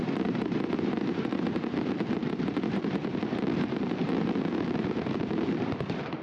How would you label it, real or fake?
fake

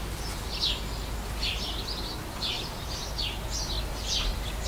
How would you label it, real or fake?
real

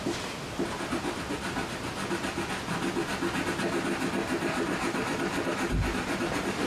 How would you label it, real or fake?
real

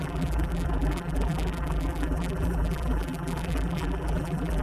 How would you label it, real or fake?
fake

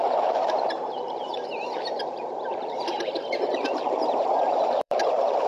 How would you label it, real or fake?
fake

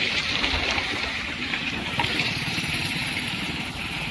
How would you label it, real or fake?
fake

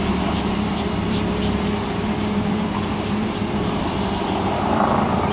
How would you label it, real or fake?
fake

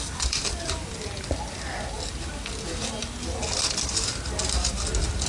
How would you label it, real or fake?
fake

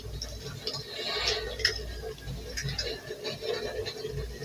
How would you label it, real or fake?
real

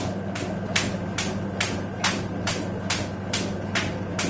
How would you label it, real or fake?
real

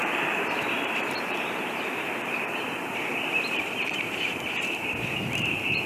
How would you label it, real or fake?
fake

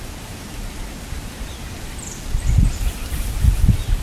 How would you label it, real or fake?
fake